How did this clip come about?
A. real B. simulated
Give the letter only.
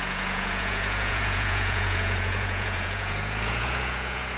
B